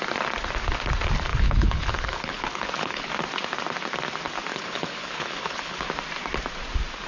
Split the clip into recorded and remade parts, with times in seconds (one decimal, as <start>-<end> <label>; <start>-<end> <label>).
0.0-1.3 recorded; 1.3-3.1 remade; 3.1-4.5 recorded; 4.5-5.9 remade; 5.9-7.1 recorded